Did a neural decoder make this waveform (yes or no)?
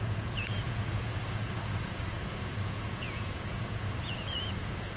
yes